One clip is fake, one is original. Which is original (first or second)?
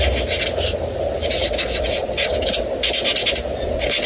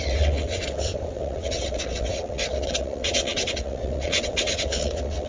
first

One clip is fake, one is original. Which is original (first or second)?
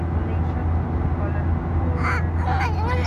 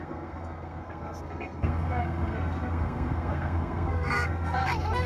first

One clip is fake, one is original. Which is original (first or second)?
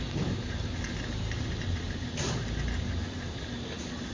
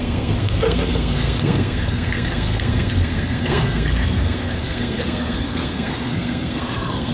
first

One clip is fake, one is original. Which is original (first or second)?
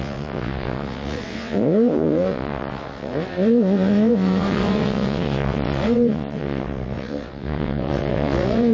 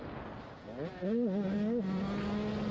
second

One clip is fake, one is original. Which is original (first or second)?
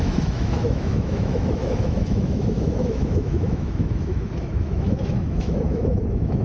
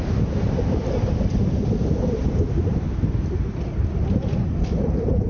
second